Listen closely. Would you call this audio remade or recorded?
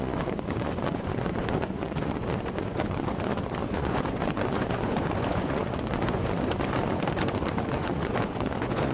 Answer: remade